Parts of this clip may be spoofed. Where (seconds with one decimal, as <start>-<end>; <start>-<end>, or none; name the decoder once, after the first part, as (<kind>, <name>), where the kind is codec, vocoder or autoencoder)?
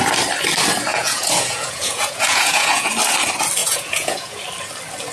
0.9-2.9 (vocoder, Vocos); 3.6-4.4